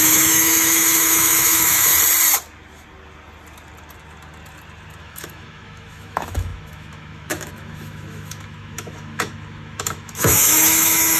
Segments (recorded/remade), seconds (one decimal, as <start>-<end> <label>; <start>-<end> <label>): 0.0-1.9 remade; 1.9-5.0 recorded; 5.0-11.2 remade